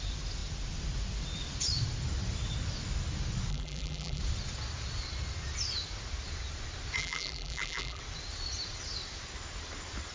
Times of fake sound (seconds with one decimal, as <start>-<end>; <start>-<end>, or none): 3.5-4.2; 7.0-8.0